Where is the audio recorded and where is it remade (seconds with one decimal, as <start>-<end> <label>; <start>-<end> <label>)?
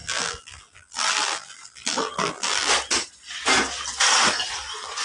0.0-2.7 remade; 2.7-5.0 recorded